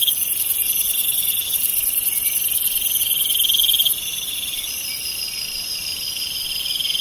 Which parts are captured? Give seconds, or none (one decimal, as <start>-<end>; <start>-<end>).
0.0-7.0